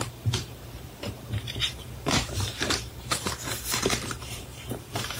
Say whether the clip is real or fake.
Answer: fake